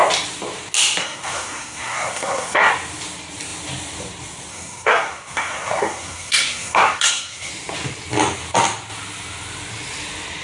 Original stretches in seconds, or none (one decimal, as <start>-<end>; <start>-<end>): 0.0-1.0; 2.7-4.5; 7.5-10.4